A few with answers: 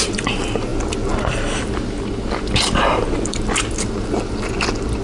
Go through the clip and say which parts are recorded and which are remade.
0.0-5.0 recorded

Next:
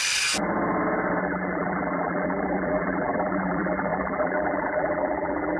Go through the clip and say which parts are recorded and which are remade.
0.0-1.2 recorded; 1.2-5.6 remade

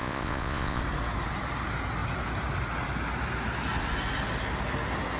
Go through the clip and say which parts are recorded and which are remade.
0.0-0.8 remade; 0.8-5.2 recorded

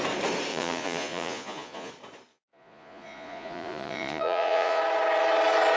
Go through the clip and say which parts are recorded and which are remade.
0.0-0.5 recorded; 0.5-1.9 remade; 1.9-2.3 recorded; 2.3-4.8 remade; 4.8-5.8 recorded